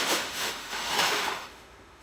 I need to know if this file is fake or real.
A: fake